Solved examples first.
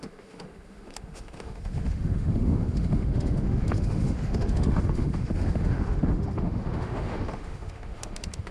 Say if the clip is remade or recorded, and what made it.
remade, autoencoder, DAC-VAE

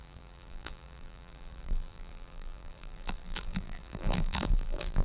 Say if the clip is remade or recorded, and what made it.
remade, vocoder, BigVGAN v2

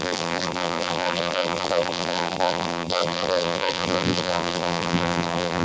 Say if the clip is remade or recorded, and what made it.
remade, vocoder, BigVGAN v2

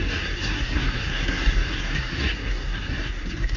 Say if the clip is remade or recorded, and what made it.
remade, codec, SNAC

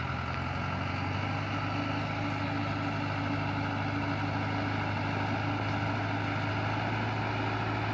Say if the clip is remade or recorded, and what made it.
recorded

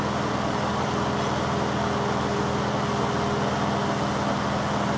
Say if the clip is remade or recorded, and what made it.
recorded